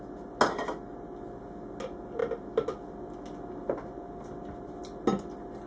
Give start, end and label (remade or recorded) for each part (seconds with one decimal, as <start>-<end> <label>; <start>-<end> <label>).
0.0-5.7 recorded

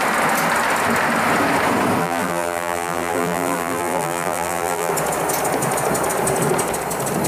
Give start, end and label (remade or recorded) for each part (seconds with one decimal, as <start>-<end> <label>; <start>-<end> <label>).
0.0-2.0 recorded; 2.0-4.9 remade; 4.9-7.3 recorded